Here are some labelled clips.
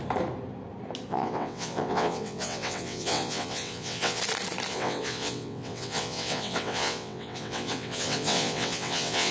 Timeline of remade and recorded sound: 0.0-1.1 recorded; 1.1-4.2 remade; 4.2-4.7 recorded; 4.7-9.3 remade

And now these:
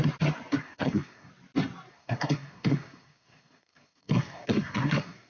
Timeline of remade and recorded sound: 0.0-0.6 recorded; 0.6-1.3 remade; 1.3-1.9 recorded; 1.9-5.3 remade

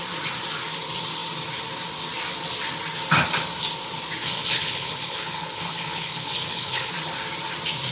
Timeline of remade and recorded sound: 0.0-4.2 recorded; 4.2-6.9 remade; 6.9-7.9 recorded

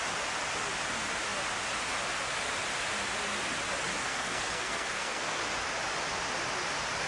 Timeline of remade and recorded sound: 0.0-4.0 recorded; 4.0-5.4 remade; 5.4-7.1 recorded

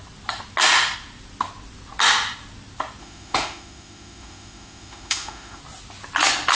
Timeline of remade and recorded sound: 0.0-3.0 recorded; 3.0-5.6 remade; 5.6-6.5 recorded

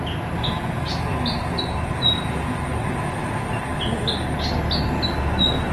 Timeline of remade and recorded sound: 0.0-5.7 recorded

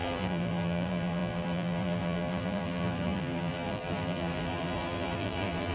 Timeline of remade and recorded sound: 0.0-5.7 remade